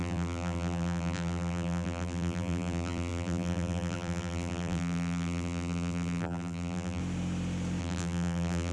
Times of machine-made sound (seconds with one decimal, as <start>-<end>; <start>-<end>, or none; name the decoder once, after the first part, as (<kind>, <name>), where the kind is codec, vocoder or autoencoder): 0.0-7.0 (vocoder, BigVGAN v2); 7.8-8.7

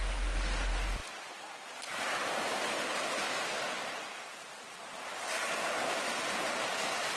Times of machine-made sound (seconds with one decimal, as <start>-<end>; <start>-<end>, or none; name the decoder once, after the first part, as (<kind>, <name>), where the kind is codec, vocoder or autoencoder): 1.0-3.0 (vocoder, BigVGAN v2); 4.0-6.7